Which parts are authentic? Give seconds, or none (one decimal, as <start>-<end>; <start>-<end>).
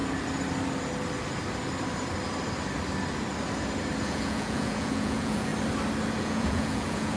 0.0-4.0; 5.5-6.2